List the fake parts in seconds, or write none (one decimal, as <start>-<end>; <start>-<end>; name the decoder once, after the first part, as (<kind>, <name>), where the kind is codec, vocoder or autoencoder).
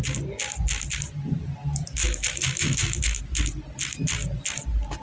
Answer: 2.0-3.2 (autoencoder, DAC-VAE)